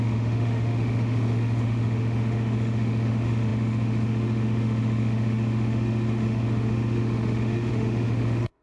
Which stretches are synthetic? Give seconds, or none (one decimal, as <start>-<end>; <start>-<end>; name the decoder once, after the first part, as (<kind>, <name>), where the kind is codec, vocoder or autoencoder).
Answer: 0.0-8.6 (autoencoder, DAC-VAE)